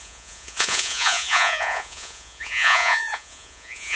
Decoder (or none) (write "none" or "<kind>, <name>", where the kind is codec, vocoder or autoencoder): vocoder, Vocos